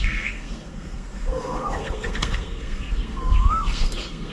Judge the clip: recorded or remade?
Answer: remade